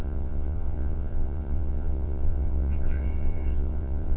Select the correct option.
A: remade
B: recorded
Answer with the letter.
A